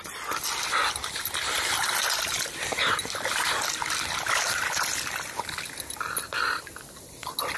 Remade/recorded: recorded